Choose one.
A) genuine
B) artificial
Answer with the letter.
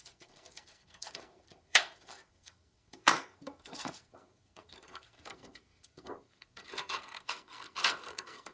B